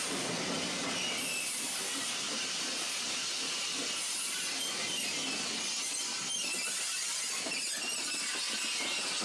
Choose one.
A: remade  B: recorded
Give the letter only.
B